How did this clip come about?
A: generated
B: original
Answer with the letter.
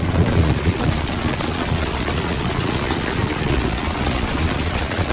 A